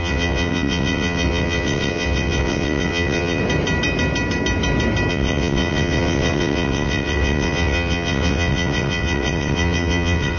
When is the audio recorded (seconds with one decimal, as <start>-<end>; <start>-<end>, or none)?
3.4-5.1